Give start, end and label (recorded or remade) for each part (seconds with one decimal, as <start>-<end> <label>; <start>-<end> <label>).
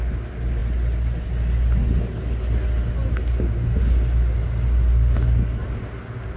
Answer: 0.0-6.4 recorded